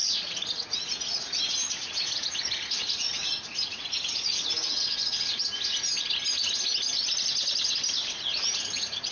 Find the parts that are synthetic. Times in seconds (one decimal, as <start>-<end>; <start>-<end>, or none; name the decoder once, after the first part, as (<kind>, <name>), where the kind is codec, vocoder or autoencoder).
0.0-5.4 (vocoder, Vocos); 7.9-9.1